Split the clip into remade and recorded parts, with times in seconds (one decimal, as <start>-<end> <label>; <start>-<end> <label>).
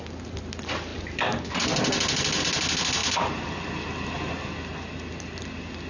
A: 0.0-5.9 recorded